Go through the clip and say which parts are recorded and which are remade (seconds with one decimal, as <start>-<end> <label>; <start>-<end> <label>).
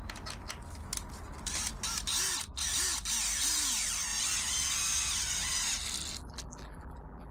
0.0-6.2 recorded; 6.2-7.3 remade